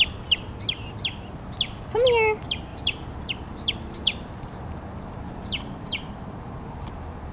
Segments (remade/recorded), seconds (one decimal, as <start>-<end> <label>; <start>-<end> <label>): 0.0-2.7 recorded; 2.7-7.3 remade